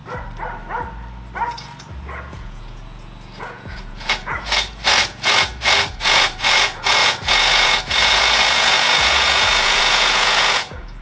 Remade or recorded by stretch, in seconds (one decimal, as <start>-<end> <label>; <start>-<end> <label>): 0.0-1.9 recorded; 1.9-11.0 remade